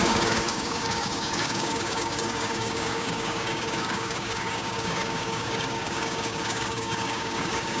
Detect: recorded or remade remade